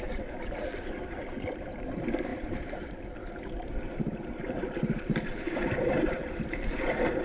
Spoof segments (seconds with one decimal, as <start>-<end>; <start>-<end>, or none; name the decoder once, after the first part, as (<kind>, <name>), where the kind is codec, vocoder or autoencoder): 0.0-7.2 (vocoder, BigVGAN v2)